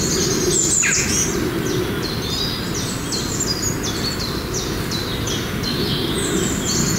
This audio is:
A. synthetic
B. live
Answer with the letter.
B